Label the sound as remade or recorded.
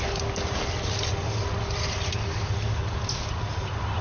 recorded